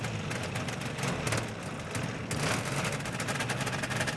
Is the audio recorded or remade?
recorded